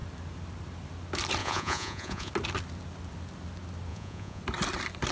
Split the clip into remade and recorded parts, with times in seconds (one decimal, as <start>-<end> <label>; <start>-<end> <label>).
0.0-1.4 recorded; 1.4-2.3 remade; 2.3-3.9 recorded; 3.9-4.4 remade; 4.4-5.1 recorded